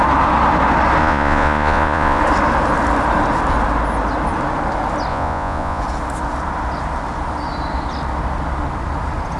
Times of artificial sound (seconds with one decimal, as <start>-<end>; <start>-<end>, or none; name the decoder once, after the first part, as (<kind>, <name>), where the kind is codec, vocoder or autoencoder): 1.0-2.2 (vocoder, Vocos); 5.1-5.8